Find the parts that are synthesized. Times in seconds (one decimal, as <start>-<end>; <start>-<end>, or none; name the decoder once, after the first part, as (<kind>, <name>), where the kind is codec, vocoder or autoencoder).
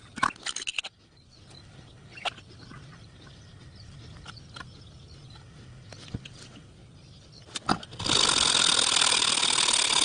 none